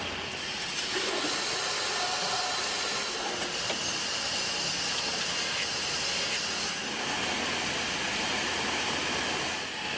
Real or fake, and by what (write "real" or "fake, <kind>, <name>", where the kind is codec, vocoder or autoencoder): real